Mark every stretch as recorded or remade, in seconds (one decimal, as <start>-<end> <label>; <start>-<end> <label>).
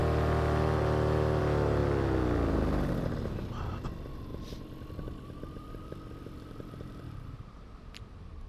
0.0-4.3 recorded; 4.3-8.1 remade; 8.1-8.5 recorded